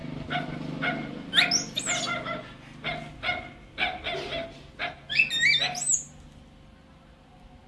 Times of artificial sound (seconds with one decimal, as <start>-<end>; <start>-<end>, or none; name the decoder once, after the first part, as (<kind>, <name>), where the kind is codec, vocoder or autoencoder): none